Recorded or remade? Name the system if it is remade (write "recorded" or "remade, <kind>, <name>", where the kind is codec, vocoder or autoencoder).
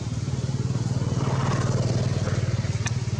recorded